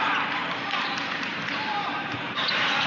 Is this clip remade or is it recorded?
remade